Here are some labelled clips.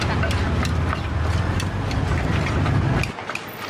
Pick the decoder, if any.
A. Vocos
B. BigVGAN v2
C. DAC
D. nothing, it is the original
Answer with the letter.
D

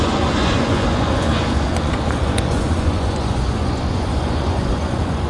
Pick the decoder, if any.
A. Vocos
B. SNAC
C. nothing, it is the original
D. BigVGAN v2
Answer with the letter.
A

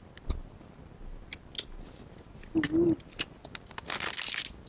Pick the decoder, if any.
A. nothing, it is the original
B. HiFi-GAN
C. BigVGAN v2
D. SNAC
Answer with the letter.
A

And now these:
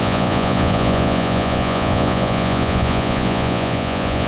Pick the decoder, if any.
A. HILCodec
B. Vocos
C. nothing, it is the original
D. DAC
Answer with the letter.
B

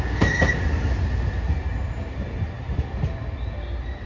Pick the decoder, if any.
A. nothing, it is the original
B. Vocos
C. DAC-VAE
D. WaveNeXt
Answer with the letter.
A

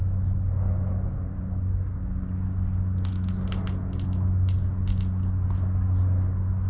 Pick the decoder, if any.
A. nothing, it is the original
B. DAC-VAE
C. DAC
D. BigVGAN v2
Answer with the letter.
A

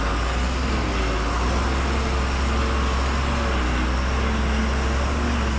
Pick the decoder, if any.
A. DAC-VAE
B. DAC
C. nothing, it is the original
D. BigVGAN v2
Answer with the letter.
C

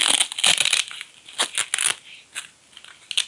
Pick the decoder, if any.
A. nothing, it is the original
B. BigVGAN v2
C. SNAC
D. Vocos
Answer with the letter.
A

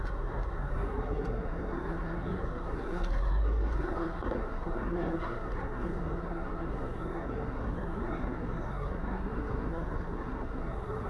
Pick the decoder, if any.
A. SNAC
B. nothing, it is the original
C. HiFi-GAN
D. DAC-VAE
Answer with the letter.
A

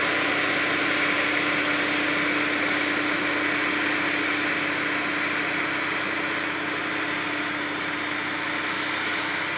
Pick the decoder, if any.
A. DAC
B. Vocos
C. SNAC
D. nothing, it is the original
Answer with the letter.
D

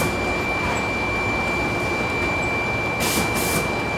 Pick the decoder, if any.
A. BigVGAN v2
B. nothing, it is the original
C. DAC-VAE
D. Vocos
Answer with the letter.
B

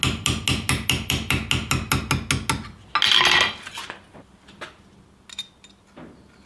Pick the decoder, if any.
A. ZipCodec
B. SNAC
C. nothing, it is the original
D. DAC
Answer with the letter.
C